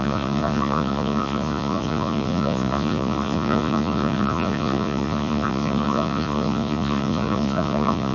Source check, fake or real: fake